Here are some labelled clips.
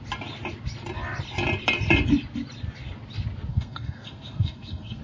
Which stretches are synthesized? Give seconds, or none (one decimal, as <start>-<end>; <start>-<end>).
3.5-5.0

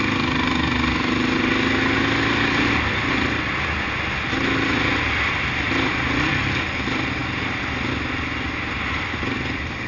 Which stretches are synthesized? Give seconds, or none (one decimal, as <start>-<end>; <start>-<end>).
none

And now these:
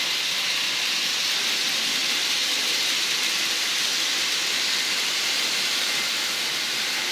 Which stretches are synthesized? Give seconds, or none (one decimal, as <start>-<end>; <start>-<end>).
none

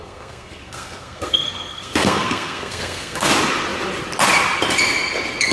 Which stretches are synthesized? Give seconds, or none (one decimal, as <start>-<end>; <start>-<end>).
0.0-3.3